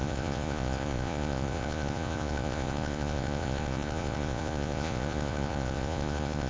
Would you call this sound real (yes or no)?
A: no